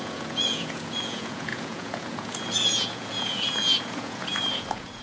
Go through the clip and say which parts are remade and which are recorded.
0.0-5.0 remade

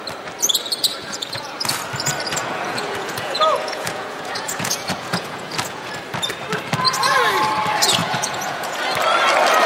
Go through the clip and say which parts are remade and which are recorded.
0.0-0.9 recorded; 0.9-1.5 remade; 1.5-2.4 recorded; 2.4-5.9 remade; 5.9-8.0 recorded; 8.0-8.8 remade; 8.8-9.7 recorded

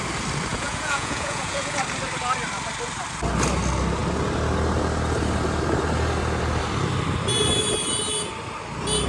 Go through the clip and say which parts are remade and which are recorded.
0.0-0.5 recorded; 0.5-1.8 remade; 1.8-9.1 recorded

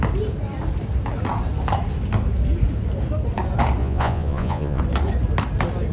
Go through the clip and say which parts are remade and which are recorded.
0.0-3.8 recorded; 3.8-4.8 remade; 4.8-5.9 recorded

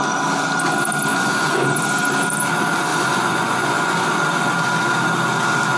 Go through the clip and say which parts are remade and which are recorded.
0.0-1.1 recorded; 1.1-1.8 remade; 1.8-2.9 recorded; 2.9-4.1 remade; 4.1-5.8 recorded

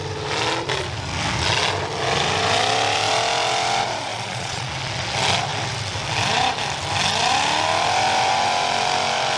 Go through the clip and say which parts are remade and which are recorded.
0.0-4.1 recorded; 4.1-4.7 remade; 4.7-9.4 recorded

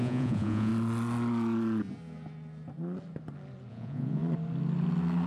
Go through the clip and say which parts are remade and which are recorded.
0.0-0.7 remade; 0.7-3.7 recorded; 3.7-4.2 remade; 4.2-5.3 recorded